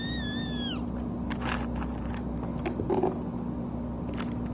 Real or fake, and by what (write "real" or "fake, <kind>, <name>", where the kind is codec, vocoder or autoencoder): real